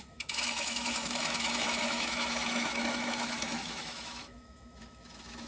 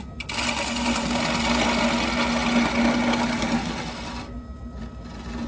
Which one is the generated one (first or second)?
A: first